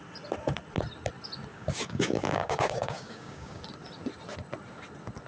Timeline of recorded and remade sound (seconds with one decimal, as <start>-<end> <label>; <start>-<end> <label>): 0.0-1.5 recorded; 1.5-3.6 remade; 3.6-5.3 recorded